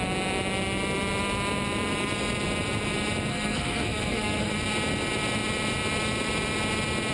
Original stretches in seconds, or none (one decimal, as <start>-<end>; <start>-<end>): 0.0-3.3; 4.5-7.1